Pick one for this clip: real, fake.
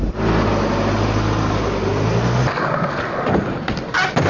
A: real